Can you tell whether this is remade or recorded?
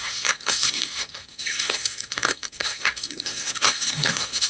remade